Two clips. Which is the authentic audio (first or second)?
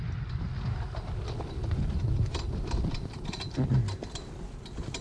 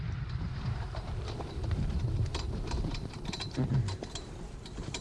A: first